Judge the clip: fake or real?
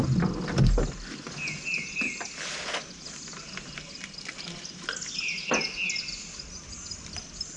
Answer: real